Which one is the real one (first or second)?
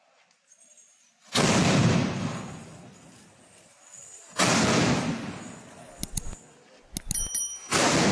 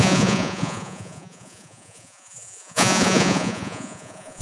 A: first